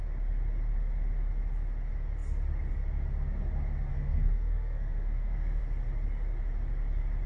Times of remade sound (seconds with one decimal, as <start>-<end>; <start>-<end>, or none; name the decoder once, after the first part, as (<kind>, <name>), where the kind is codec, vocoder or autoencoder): 3.9-5.6 (codec, SNAC)